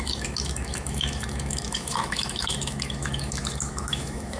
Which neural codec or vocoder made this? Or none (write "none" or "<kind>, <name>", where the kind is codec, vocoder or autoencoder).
autoencoder, DAC-VAE